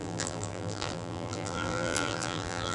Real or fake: fake